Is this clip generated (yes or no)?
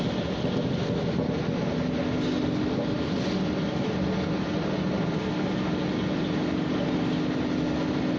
no